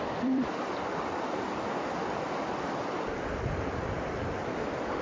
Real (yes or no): no